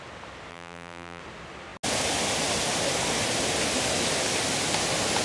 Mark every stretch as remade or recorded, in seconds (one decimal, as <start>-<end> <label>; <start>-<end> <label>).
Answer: 0.0-0.5 recorded; 0.5-1.2 remade; 1.2-5.2 recorded